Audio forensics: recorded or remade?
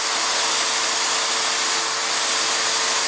recorded